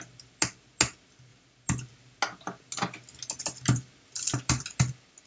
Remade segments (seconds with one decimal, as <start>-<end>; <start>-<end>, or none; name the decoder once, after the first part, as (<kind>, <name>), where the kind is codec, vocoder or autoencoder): none